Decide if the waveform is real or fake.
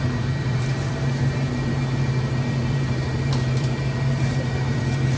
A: fake